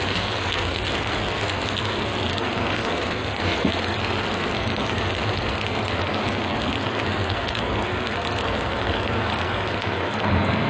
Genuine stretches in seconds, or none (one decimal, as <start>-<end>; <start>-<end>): none